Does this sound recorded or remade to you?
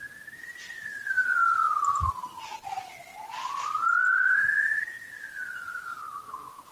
recorded